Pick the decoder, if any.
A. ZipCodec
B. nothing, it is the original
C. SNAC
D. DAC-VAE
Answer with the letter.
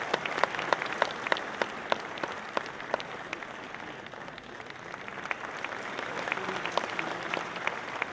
B